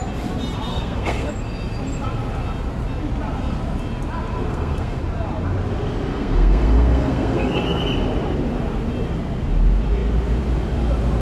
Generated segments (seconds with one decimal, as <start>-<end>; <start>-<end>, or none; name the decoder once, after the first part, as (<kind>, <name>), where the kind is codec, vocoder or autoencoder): 0.7-1.3 (codec, SNAC); 4.5-5.0; 6.1-7.8